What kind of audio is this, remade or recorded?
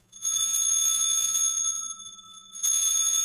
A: remade